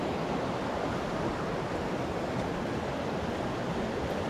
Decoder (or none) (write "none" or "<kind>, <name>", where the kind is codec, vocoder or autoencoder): none